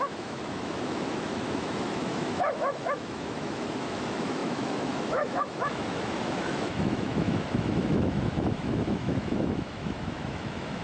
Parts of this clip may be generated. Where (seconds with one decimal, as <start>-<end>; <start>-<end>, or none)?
0.0-10.8